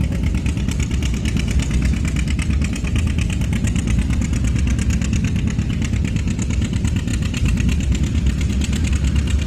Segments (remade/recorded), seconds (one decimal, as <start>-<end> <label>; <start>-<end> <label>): 0.0-7.1 recorded; 7.1-8.9 remade; 8.9-9.5 recorded